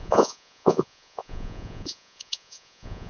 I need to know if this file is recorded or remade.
remade